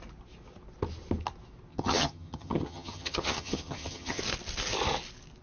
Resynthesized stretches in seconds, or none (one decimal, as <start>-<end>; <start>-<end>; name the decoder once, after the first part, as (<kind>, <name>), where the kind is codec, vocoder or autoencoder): 1.7-4.2 (vocoder, HiFi-GAN)

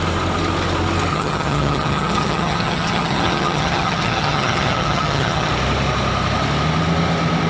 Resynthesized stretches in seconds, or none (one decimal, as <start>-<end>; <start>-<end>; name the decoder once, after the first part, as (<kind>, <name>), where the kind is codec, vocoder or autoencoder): 1.1-5.5 (vocoder, HiFi-GAN)

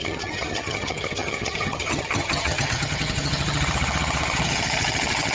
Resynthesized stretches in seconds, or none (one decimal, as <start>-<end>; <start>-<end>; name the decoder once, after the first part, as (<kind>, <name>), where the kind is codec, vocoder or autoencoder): 0.0-5.3 (vocoder, HiFi-GAN)

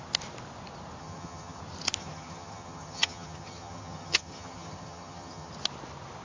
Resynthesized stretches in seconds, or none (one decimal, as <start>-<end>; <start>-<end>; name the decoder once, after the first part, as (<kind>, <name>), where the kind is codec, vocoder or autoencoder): 1.0-1.6 (vocoder, HiFi-GAN); 2.0-5.5

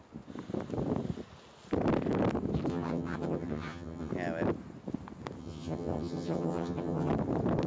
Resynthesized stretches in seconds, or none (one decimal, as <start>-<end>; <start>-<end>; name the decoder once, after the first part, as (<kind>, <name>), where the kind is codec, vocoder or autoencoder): 2.7-4.1 (vocoder, HiFi-GAN); 5.4-7.1

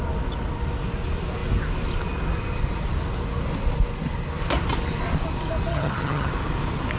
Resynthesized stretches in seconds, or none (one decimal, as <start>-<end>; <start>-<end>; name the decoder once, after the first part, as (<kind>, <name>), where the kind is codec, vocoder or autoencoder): 5.7-6.3 (vocoder, HiFi-GAN)